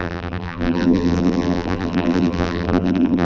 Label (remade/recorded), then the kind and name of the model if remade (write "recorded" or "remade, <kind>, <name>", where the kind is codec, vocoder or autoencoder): remade, vocoder, BigVGAN v2